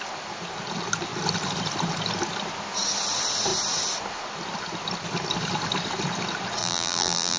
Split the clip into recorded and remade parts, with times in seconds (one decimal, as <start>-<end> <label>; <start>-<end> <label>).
0.0-6.6 recorded; 6.6-7.4 remade